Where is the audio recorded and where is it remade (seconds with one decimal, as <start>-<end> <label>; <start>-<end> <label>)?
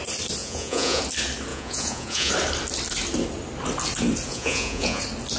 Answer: 0.0-0.4 recorded; 0.4-1.0 remade; 1.0-1.5 recorded; 1.5-2.3 remade; 2.3-4.3 recorded; 4.3-5.0 remade; 5.0-5.4 recorded